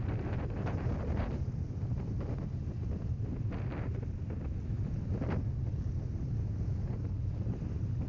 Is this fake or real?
real